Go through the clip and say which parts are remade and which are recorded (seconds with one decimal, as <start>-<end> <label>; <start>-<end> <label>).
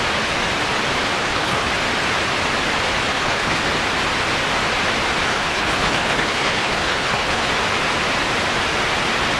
0.0-1.2 recorded; 1.2-1.7 remade; 1.7-3.1 recorded; 3.1-3.6 remade; 3.6-5.3 recorded; 5.3-7.5 remade; 7.5-9.4 recorded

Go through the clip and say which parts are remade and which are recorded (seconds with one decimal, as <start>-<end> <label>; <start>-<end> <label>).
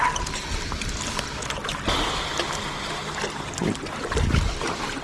0.0-5.0 recorded